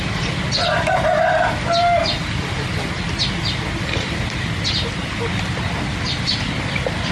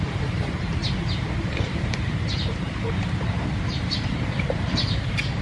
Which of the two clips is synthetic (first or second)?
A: second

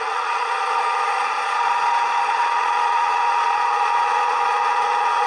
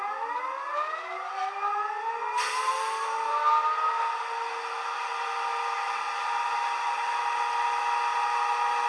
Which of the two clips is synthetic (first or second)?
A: first